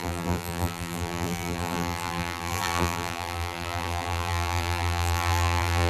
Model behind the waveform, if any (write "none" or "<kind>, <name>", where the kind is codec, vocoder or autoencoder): vocoder, BigVGAN v2